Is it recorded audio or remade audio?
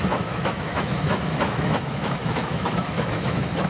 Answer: remade